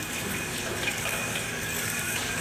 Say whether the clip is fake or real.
fake